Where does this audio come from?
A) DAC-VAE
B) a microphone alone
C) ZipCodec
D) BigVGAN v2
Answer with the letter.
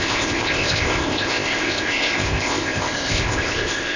C